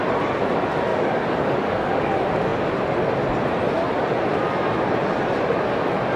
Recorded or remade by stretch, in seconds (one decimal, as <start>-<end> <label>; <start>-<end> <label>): 0.0-0.9 recorded; 0.9-2.1 remade; 2.1-6.2 recorded